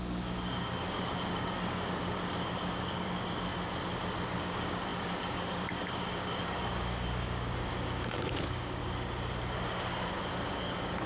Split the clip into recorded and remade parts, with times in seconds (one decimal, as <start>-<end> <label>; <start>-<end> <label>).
0.0-3.5 remade; 3.5-4.4 recorded; 4.4-8.8 remade; 8.8-10.5 recorded; 10.5-11.1 remade